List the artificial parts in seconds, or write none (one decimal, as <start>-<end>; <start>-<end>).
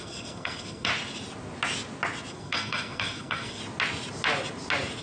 0.0-0.9; 2.3-3.6